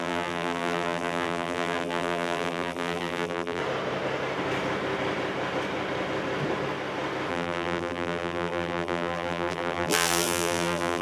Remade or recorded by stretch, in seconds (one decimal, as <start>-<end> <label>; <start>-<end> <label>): 0.0-3.6 remade; 3.6-7.3 recorded; 7.3-11.0 remade